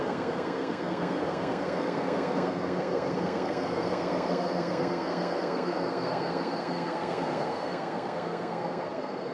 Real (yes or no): no